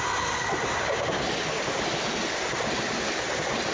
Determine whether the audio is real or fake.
real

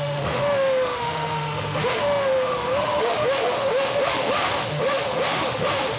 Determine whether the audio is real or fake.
fake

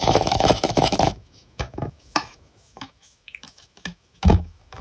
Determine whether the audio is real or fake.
fake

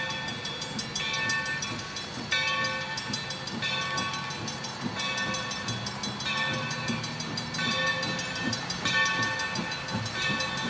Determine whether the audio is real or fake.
real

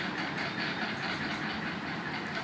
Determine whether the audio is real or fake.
real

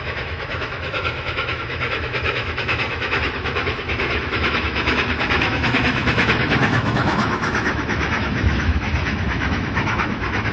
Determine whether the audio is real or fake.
fake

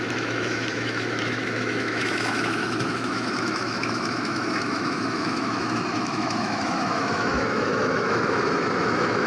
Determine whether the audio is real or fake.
fake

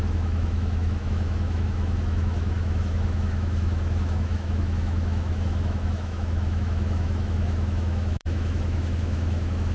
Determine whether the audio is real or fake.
fake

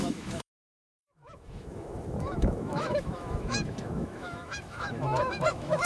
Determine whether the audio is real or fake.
fake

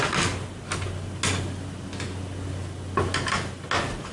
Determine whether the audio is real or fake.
real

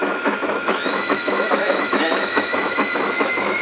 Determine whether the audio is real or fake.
fake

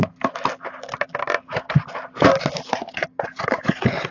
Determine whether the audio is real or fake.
real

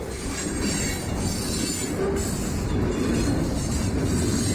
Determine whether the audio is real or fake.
real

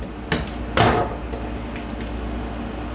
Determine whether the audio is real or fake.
real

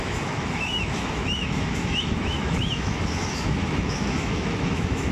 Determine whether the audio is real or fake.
fake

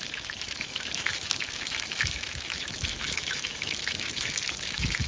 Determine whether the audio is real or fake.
fake